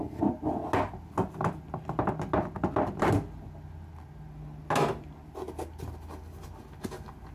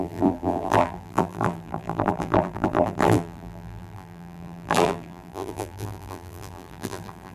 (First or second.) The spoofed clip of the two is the second